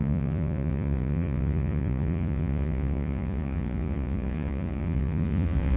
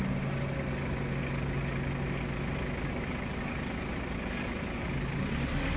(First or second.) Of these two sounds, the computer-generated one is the first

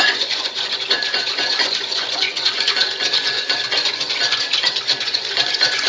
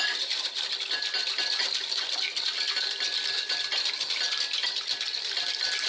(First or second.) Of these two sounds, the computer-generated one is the first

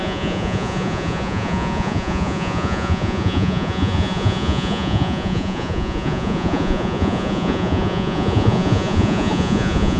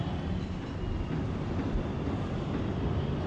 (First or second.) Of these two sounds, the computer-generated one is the first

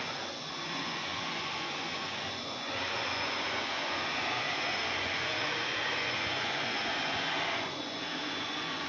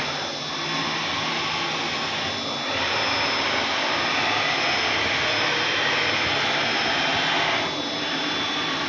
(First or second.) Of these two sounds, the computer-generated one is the first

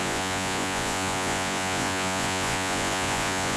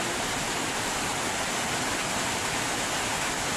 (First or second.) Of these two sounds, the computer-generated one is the first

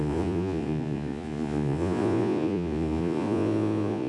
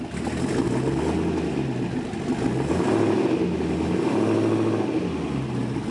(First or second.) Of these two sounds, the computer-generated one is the first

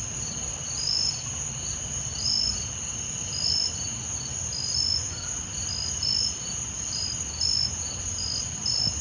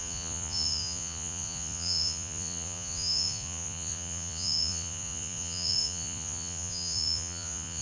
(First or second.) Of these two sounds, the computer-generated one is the second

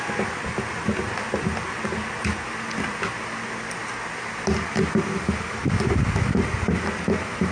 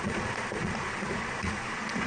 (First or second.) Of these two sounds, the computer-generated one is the second